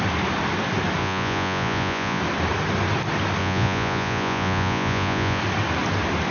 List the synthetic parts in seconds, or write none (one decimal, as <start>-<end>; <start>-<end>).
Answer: 1.0-2.2; 3.4-5.4